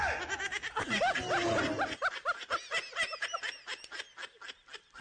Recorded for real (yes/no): yes